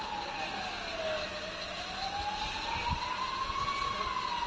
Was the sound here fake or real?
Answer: real